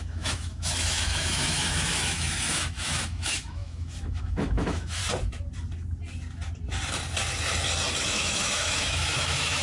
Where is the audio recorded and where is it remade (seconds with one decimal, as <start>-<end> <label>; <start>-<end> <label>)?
0.0-5.0 remade; 5.0-8.0 recorded; 8.0-9.6 remade